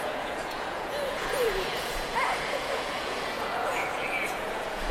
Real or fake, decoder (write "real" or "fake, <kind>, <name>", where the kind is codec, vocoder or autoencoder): fake, vocoder, Vocos